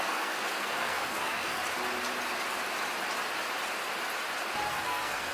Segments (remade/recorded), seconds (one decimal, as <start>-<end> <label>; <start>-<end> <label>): 0.0-1.6 remade; 1.6-4.7 recorded; 4.7-5.3 remade